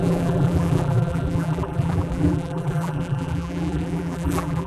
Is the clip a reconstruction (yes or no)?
yes